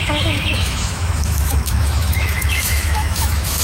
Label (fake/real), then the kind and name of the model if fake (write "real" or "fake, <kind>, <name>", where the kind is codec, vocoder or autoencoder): fake, autoencoder, DAC-VAE